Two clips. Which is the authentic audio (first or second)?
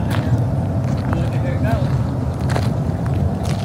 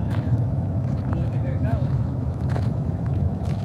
first